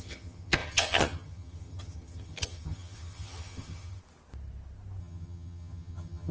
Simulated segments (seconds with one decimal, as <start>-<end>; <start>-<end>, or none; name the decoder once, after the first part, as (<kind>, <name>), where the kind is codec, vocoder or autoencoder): 0.0-4.0 (vocoder, HiFi-GAN); 5.0-6.3